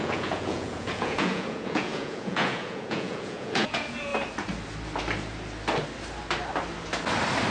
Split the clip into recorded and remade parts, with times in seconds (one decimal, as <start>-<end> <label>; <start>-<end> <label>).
0.0-4.1 remade; 4.1-7.5 recorded